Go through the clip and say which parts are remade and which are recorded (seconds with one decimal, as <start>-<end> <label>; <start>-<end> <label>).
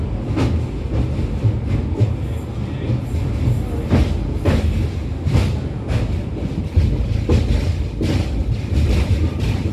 0.0-8.4 recorded; 8.4-9.7 remade